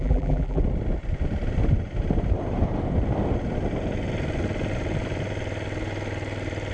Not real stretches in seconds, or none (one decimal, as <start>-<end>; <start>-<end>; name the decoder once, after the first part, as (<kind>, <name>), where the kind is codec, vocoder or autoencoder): 0.0-0.6 (vocoder, BigVGAN v2)